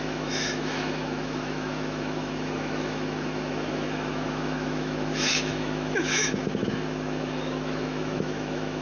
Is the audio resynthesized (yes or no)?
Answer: yes